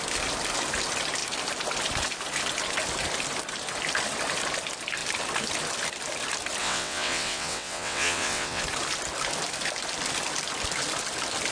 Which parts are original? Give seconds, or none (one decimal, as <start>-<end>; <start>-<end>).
0.0-6.6; 8.6-11.5